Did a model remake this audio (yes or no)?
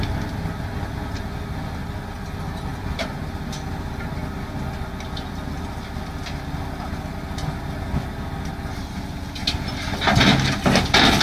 no